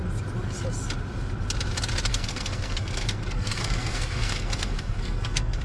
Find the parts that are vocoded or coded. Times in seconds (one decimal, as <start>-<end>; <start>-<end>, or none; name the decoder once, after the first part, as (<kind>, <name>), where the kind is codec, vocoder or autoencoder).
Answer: 2.1-5.6 (codec, SNAC)